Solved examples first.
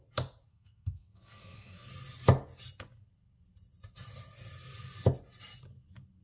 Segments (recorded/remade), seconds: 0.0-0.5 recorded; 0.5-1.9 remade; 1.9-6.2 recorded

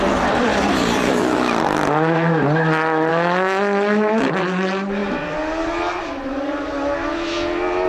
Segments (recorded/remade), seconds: 0.0-3.1 recorded; 3.1-4.3 remade; 4.3-7.9 recorded

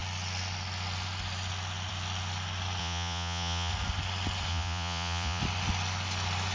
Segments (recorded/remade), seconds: 0.0-2.8 recorded; 2.8-3.7 remade; 3.7-4.5 recorded; 4.5-5.4 remade; 5.4-6.5 recorded

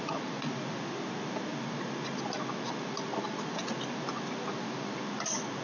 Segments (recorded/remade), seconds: 0.0-5.6 recorded

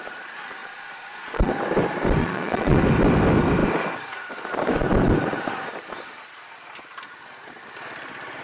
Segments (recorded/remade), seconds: 0.0-0.6 recorded; 0.6-1.5 remade; 1.5-2.2 recorded; 2.2-2.8 remade; 2.8-8.4 recorded